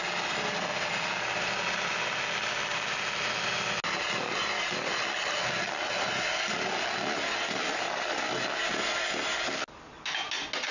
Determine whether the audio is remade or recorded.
recorded